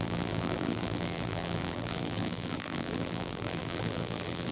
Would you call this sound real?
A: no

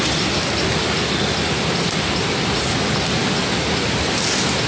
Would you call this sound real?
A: yes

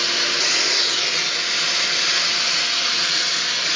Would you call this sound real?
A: yes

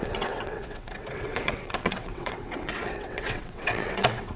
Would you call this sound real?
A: no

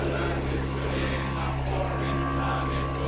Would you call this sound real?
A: yes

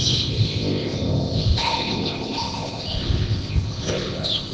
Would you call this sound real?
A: no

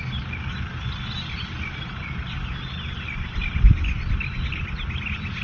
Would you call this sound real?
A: yes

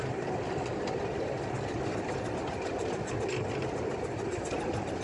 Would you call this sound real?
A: yes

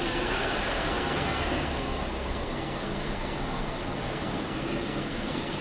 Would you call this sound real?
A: no